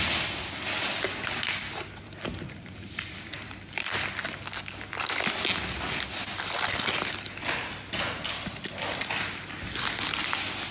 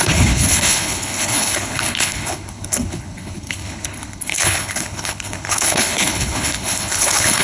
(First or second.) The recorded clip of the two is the first